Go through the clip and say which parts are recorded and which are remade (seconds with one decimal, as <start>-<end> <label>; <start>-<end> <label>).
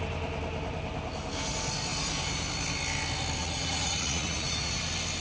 0.0-3.4 recorded; 3.4-4.8 remade; 4.8-5.2 recorded